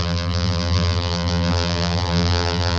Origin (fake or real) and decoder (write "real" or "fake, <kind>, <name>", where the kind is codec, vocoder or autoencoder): fake, vocoder, BigVGAN v2